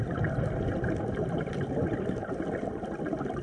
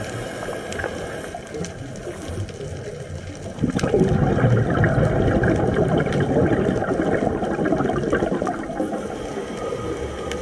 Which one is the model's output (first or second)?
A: first